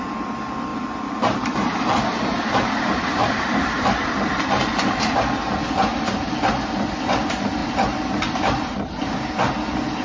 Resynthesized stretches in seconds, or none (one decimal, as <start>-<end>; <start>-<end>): 0.7-5.6; 7.6-9.3